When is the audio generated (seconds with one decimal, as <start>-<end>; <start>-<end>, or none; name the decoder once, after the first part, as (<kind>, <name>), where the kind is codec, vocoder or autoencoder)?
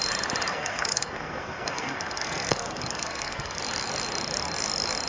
0.5-3.6 (codec, SNAC)